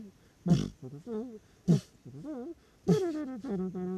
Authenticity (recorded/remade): recorded